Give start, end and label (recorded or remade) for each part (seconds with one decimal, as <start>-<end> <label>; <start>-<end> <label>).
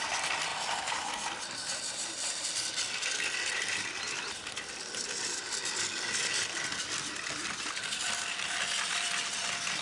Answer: 0.0-9.8 remade